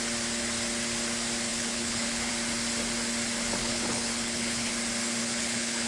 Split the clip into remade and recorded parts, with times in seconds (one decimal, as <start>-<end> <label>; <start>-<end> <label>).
0.0-1.5 recorded; 1.5-2.3 remade; 2.3-3.6 recorded; 3.6-4.7 remade; 4.7-5.2 recorded; 5.2-5.9 remade